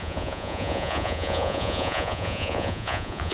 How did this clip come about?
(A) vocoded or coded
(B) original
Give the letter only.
A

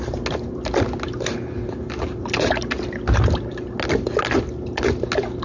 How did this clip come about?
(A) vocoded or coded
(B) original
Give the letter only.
B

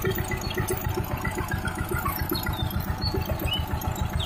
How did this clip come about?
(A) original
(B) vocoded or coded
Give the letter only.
A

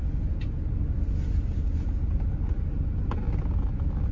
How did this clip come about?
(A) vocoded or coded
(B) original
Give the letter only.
B